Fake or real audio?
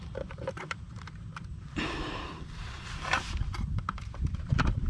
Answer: fake